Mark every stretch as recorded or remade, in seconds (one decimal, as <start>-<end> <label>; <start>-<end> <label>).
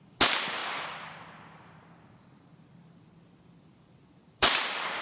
0.0-0.6 recorded; 0.6-1.1 remade; 1.1-2.5 recorded; 2.5-5.0 remade